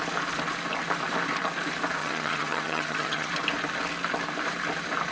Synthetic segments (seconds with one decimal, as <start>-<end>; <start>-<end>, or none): 2.0-3.3